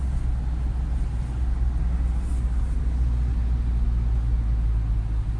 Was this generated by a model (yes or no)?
no